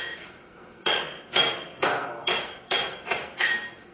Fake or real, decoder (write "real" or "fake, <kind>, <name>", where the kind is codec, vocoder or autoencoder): fake, codec, SNAC